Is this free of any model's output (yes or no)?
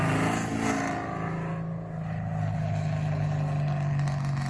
yes